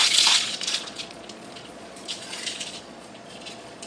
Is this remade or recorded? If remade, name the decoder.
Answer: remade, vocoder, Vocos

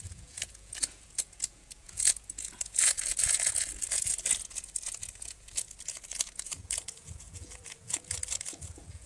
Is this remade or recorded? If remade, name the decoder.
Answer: remade, vocoder, Vocos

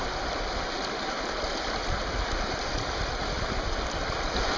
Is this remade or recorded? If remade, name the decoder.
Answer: recorded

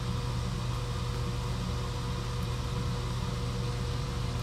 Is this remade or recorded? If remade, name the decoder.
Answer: recorded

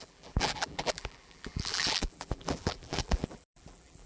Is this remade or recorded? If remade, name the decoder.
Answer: remade, vocoder, BigVGAN v2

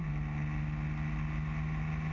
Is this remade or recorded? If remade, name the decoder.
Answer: recorded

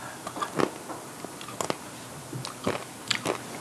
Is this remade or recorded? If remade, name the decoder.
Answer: recorded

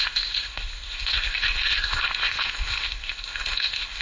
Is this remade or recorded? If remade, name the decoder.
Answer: remade, codec, ZipCodec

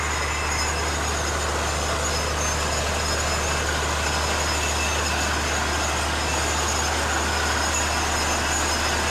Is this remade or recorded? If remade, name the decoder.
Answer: recorded